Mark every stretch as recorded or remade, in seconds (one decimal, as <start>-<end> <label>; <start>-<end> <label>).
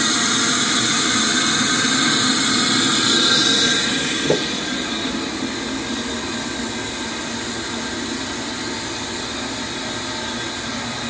0.0-11.1 recorded